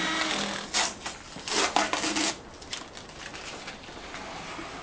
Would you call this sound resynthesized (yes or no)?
no